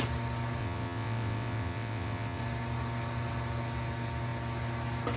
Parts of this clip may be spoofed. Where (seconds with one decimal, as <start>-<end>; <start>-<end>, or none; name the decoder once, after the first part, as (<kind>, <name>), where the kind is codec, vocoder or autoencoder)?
0.6-2.4 (vocoder, WaveNeXt)